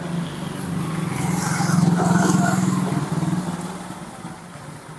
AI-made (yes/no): no